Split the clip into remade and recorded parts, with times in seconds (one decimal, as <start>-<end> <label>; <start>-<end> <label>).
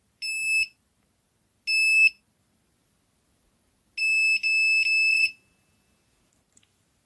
0.0-5.1 recorded; 5.1-6.3 remade; 6.3-7.1 recorded